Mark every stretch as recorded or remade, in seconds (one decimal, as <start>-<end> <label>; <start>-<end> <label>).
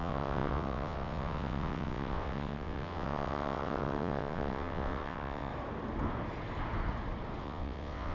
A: 0.0-5.5 remade; 5.5-7.4 recorded; 7.4-8.1 remade